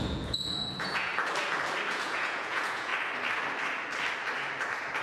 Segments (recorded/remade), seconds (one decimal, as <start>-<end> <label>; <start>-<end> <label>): 0.0-1.1 remade; 1.1-1.9 recorded; 1.9-2.9 remade; 2.9-5.0 recorded